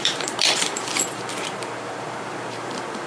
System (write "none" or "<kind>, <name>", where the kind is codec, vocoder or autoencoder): vocoder, BigVGAN v2